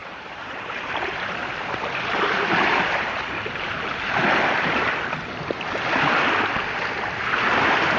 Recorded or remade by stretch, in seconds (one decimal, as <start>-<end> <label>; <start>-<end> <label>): 0.0-1.3 remade; 1.3-2.7 recorded; 2.7-3.9 remade; 3.9-8.0 recorded

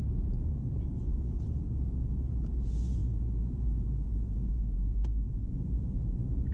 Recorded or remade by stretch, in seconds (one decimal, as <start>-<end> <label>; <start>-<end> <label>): 0.0-6.5 remade

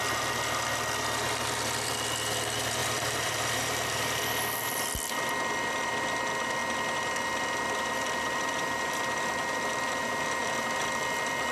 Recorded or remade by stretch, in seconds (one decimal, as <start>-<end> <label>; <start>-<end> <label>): 0.0-2.8 recorded; 2.8-4.2 remade; 4.2-11.5 recorded

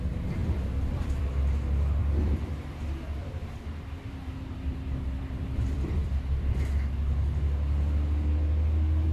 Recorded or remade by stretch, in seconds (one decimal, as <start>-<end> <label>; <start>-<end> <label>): 0.0-0.4 recorded; 0.4-1.2 remade; 1.2-2.0 recorded; 2.0-6.7 remade; 6.7-9.1 recorded

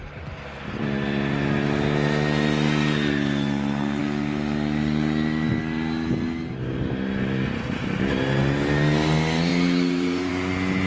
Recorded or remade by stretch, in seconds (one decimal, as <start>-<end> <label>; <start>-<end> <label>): 0.0-9.5 recorded; 9.5-10.3 remade; 10.3-10.9 recorded

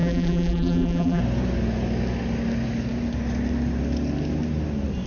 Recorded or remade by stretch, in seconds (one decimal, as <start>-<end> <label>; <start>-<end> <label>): 0.0-1.2 remade; 1.2-5.1 recorded